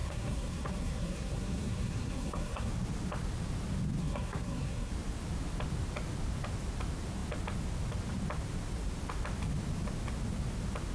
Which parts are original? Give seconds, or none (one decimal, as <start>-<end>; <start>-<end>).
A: 2.7-4.0; 4.9-10.9